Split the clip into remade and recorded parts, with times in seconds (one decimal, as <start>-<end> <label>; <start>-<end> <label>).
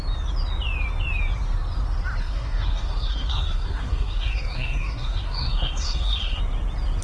0.0-2.2 recorded; 2.2-6.4 remade; 6.4-7.0 recorded